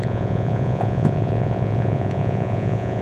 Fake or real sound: fake